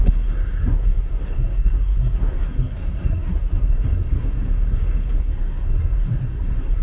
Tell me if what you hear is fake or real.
fake